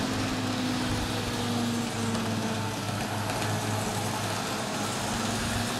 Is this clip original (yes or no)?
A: yes